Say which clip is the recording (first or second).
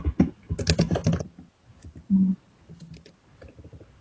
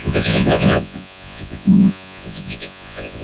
first